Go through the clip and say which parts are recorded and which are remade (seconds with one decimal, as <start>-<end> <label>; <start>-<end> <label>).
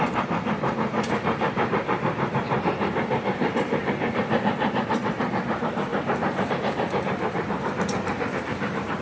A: 0.0-9.0 remade